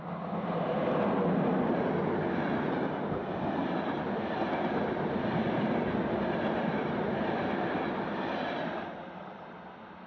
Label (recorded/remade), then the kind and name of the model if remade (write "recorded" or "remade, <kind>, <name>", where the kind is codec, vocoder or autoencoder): recorded